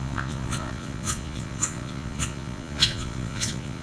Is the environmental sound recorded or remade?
remade